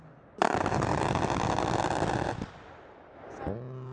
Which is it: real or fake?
fake